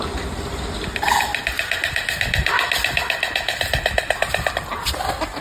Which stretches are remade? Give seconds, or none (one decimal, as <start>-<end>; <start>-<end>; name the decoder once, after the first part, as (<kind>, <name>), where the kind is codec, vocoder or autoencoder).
none